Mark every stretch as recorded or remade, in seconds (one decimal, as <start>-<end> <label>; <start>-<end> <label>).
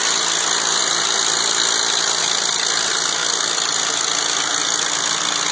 0.0-5.5 recorded